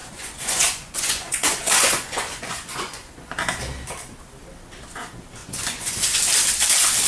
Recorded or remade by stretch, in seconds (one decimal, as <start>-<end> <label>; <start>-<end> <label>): 0.0-3.4 remade; 3.4-5.4 recorded; 5.4-6.2 remade; 6.2-7.1 recorded